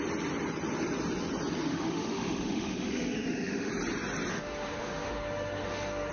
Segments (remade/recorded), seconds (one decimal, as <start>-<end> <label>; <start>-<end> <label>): 0.0-1.7 recorded; 1.7-3.7 remade; 3.7-4.3 recorded; 4.3-6.1 remade